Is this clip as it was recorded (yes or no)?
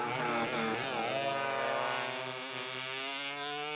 yes